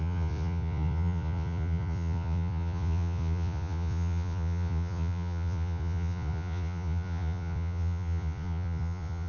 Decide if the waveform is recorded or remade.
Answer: remade